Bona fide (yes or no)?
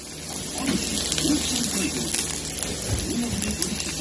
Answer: yes